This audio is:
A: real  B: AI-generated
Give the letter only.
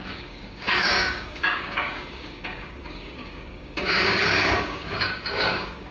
B